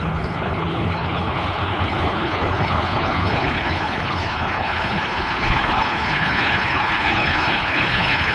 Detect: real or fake fake